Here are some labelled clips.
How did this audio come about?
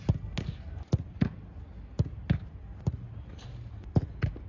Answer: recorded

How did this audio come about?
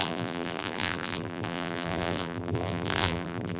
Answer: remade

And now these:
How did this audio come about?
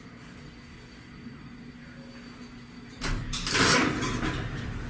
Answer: recorded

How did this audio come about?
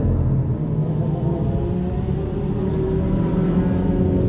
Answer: recorded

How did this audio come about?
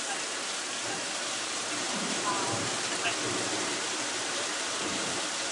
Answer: remade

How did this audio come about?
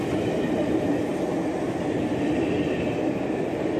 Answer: recorded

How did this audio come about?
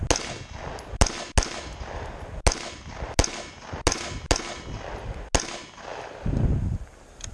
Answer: recorded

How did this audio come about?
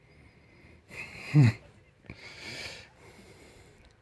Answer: remade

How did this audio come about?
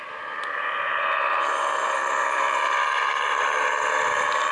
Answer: remade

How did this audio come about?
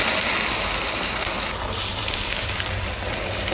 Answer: remade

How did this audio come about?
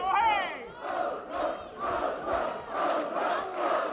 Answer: recorded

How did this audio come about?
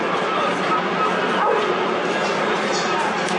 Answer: recorded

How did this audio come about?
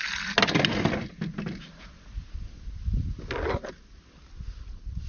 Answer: recorded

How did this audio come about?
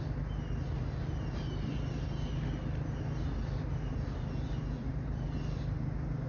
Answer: recorded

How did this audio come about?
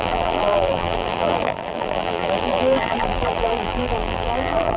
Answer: remade